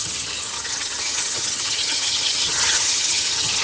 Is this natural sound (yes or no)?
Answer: no